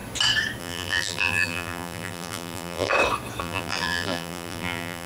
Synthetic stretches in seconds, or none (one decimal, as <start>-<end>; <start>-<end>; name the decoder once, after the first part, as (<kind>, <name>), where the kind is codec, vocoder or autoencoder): 0.6-2.9 (vocoder, BigVGAN v2); 3.4-5.1